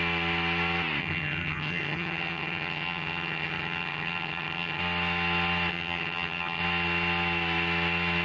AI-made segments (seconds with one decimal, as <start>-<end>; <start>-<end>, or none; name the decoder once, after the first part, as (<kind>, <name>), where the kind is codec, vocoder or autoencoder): 1.0-4.8 (vocoder, HiFi-GAN); 5.7-6.6